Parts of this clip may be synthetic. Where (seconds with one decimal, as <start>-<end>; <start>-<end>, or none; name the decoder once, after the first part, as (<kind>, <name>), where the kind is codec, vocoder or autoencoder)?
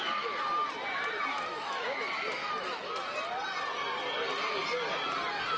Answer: 1.5-2.9 (autoencoder, DAC-VAE)